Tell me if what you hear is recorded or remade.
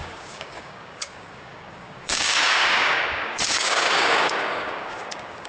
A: remade